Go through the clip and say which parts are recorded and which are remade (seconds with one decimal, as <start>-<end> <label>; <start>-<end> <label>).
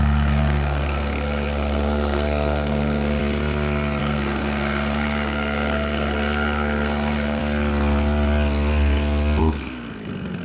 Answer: 0.0-3.2 remade; 3.2-4.0 recorded; 4.0-7.4 remade; 7.4-9.4 recorded; 9.4-10.4 remade